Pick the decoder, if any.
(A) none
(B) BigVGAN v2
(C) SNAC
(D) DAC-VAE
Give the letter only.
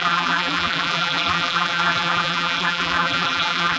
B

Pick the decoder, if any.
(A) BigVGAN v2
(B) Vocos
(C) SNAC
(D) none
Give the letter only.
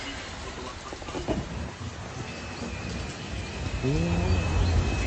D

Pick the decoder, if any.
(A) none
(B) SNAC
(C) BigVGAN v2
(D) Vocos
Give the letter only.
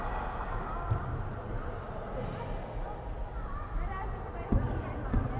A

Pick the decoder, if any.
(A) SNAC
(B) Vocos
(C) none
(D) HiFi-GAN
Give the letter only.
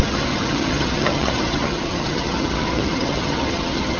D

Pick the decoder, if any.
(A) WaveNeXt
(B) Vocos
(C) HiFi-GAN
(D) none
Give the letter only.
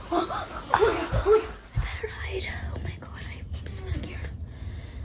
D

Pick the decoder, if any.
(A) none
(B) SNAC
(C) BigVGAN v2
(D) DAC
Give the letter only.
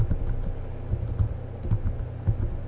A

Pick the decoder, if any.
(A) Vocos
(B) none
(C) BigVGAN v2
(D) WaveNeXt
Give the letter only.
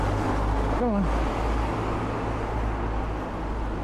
B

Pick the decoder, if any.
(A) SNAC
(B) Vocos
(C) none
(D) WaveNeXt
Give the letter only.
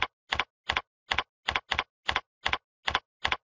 C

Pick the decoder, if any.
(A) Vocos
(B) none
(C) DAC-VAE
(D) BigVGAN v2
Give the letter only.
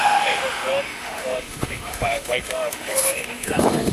C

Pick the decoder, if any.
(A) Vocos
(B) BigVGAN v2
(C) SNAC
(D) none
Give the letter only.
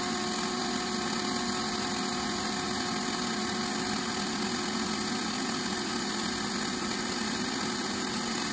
D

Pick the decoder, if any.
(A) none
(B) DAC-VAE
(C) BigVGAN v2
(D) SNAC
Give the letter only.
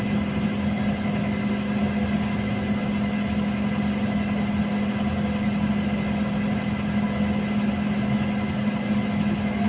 A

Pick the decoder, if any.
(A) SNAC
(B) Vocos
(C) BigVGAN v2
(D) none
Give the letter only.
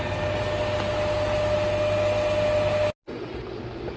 D